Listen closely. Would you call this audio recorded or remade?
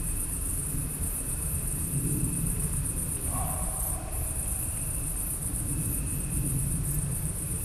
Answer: remade